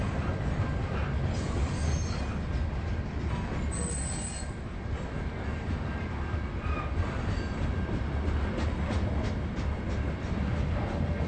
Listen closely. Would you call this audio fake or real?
real